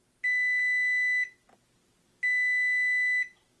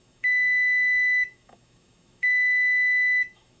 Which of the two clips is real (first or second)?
first